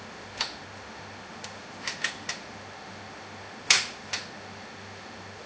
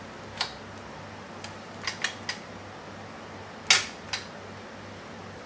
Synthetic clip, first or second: first